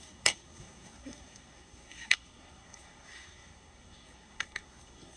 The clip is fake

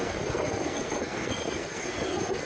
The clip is fake